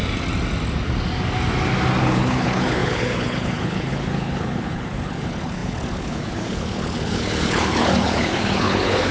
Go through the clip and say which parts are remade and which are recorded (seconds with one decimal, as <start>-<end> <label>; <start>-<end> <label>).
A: 0.0-2.0 recorded; 2.0-9.1 remade